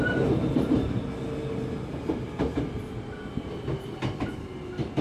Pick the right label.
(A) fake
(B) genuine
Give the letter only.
B